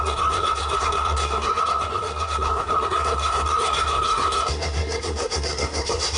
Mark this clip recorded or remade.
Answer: remade